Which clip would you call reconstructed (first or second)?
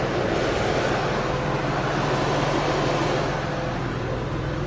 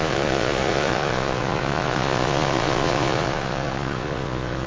second